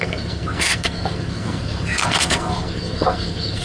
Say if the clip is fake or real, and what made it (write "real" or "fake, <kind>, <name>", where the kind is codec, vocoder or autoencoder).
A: fake, codec, SNAC